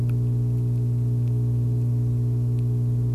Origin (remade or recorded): recorded